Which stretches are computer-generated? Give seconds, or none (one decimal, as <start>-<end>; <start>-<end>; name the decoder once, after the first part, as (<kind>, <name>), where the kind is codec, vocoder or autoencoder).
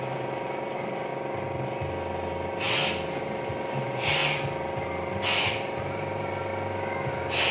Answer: 0.0-1.1 (vocoder, BigVGAN v2); 3.2-4.2; 5.4-6.5